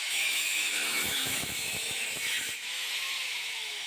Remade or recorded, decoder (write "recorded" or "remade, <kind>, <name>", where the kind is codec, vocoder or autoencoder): remade, autoencoder, DAC-VAE